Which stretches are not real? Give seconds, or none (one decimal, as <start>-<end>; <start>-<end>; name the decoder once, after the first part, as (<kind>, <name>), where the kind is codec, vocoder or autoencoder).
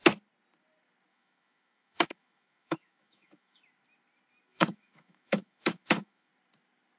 1.1-3.6 (autoencoder, DAC-VAE); 4.5-6.3